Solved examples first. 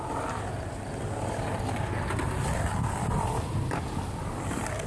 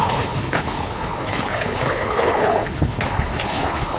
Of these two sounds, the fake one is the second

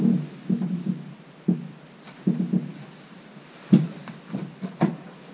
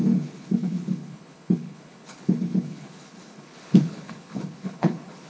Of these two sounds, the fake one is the second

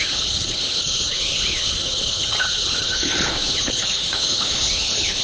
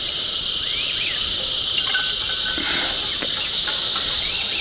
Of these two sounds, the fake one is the first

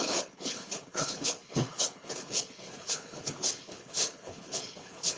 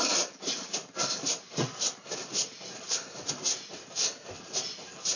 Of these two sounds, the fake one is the first